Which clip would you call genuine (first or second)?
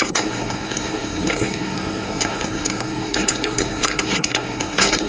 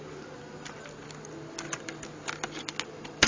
second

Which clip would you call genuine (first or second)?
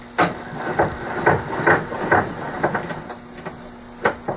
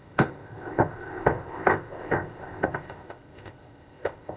first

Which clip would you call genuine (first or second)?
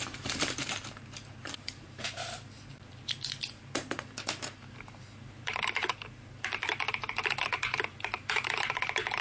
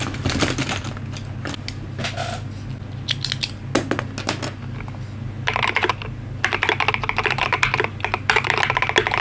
second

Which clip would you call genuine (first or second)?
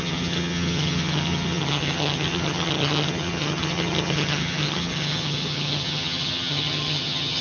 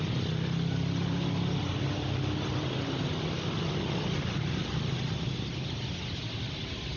second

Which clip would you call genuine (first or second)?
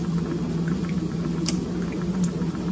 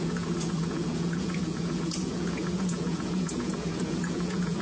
first